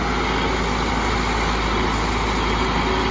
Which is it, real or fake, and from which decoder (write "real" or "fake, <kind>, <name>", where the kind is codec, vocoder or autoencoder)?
real